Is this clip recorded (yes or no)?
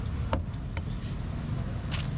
yes